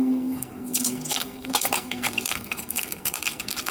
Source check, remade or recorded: remade